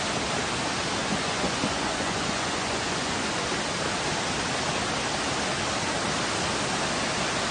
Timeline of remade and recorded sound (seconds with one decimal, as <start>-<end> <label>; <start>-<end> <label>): 0.0-1.0 recorded; 1.0-3.5 remade; 3.5-7.5 recorded

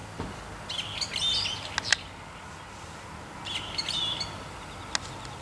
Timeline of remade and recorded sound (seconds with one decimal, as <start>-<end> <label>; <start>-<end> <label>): 0.0-5.4 recorded